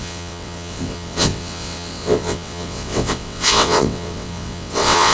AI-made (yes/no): yes